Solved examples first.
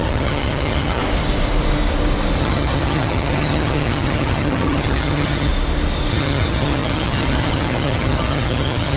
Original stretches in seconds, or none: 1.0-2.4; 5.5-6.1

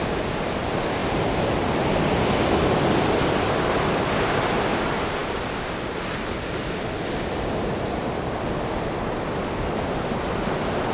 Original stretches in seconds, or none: 0.0-10.9

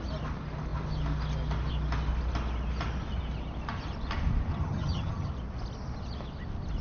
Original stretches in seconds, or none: 0.0-4.5; 5.3-6.8

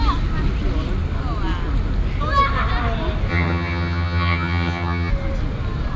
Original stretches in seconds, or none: 0.0-3.3; 5.1-6.0